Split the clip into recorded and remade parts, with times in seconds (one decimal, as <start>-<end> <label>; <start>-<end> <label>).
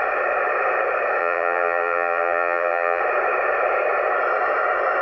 0.0-1.2 recorded; 1.2-3.0 remade; 3.0-5.0 recorded